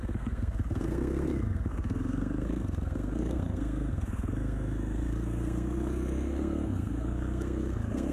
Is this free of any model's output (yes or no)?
no